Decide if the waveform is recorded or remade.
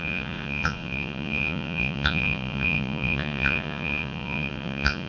remade